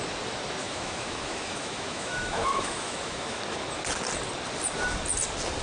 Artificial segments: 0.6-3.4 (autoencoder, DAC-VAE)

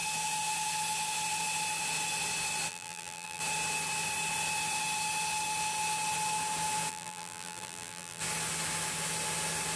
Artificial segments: 2.7-3.4 (vocoder, BigVGAN v2); 6.9-8.2

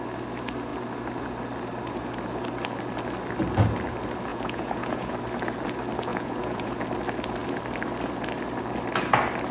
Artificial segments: 4.3-5.1 (vocoder, Vocos); 6.1-6.8